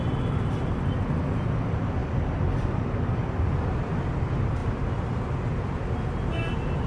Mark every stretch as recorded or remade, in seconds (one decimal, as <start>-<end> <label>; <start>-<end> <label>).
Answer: 0.0-6.9 recorded